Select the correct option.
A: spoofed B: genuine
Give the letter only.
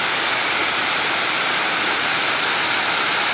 B